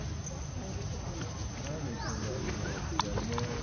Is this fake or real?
real